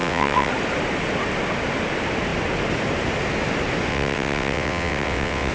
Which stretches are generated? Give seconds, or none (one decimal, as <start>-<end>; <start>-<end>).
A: 0.0-0.5; 3.9-5.5